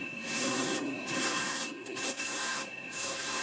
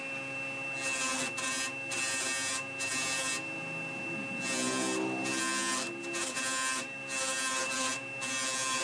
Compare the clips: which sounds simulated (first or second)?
first